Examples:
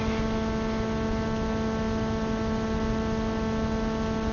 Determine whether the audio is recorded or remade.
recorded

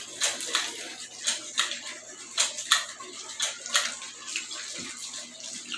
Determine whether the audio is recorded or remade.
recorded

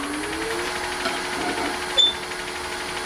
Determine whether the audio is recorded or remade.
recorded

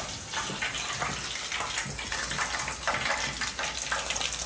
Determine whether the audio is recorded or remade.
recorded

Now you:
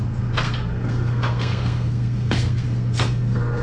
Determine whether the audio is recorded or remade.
remade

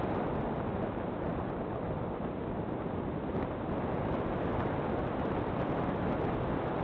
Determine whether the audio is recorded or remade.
recorded